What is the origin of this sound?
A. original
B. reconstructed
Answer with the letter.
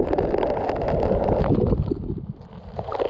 A